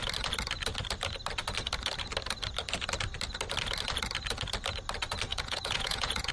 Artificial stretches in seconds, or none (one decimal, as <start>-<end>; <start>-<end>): 5.3-6.3